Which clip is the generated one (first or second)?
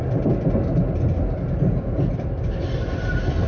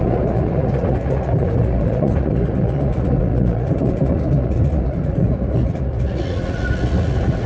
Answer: second